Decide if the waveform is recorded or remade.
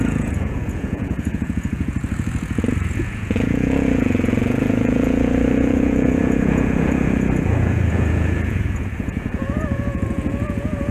remade